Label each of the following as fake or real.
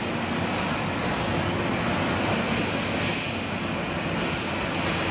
real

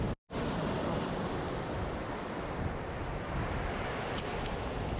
real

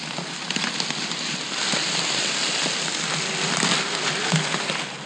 real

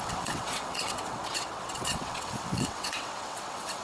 fake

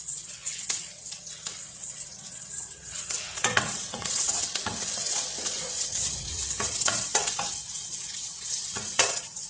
fake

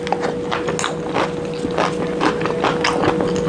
real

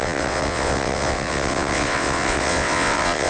fake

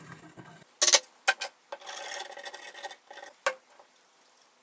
real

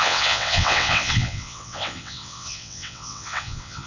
fake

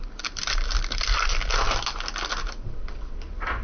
real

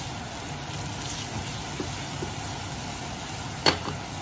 real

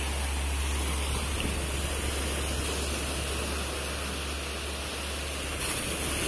real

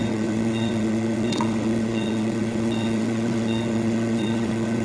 fake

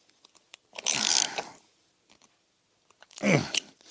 real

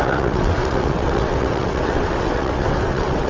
fake